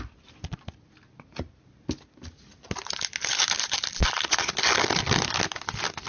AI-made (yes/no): no